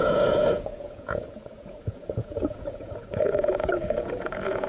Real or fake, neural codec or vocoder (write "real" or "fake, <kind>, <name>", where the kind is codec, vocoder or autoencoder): fake, vocoder, Vocos